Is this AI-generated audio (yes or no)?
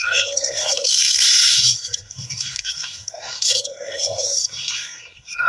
yes